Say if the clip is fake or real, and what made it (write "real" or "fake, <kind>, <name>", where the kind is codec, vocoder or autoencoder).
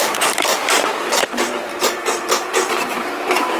fake, vocoder, BigVGAN v2